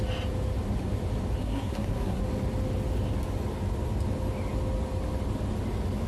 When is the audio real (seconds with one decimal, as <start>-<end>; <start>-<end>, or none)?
0.0-1.4; 2.2-6.1

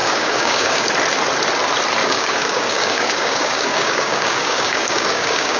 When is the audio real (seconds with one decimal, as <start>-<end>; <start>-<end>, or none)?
0.9-2.0

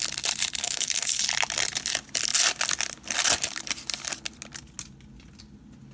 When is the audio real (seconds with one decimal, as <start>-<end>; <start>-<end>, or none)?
0.0-0.6; 1.2-5.9